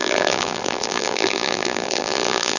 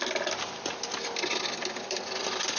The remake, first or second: first